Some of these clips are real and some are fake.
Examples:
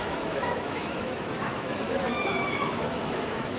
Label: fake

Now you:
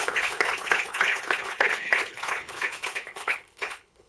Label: fake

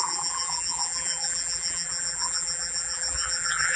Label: fake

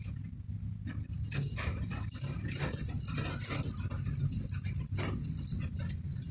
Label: real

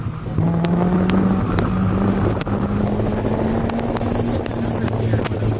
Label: real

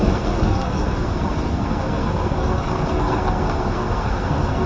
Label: fake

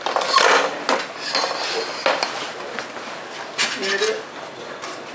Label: real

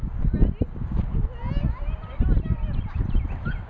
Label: real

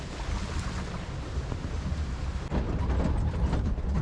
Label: real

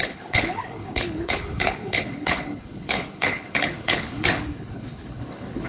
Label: fake